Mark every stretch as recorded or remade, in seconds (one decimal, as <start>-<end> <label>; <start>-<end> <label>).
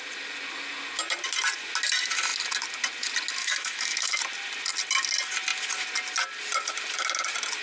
0.0-3.4 recorded; 3.4-4.2 remade; 4.2-7.6 recorded